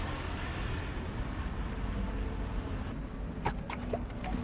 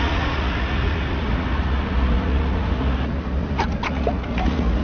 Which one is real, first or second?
first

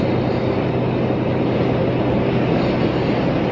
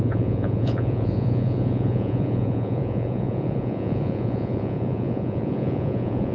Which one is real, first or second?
first